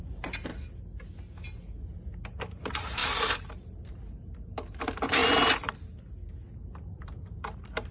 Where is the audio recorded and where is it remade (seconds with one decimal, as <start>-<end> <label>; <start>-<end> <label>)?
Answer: 0.0-0.5 remade; 0.5-2.4 recorded; 2.4-5.2 remade; 5.2-6.9 recorded; 6.9-7.9 remade